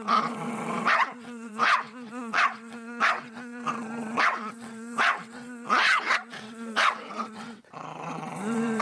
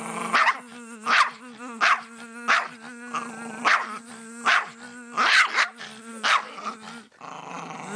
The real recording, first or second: second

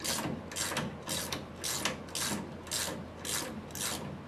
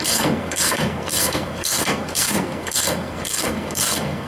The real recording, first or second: first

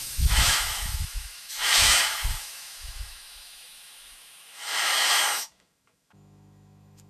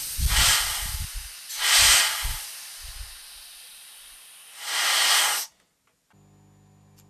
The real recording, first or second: second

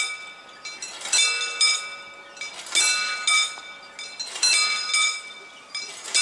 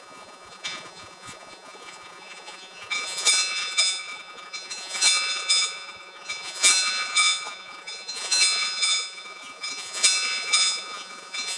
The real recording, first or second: first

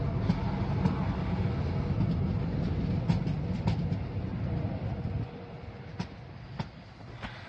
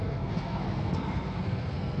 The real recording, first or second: first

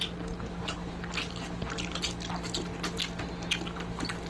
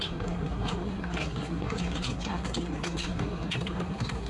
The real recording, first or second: first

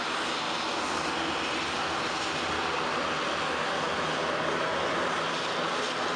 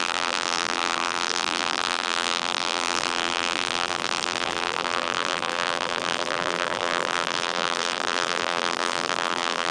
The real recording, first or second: first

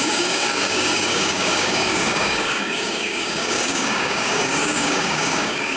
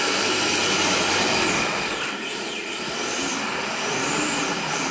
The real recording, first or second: second